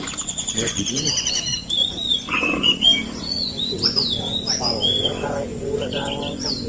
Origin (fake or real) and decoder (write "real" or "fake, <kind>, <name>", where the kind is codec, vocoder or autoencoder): fake, vocoder, Vocos